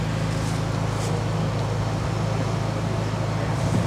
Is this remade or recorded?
recorded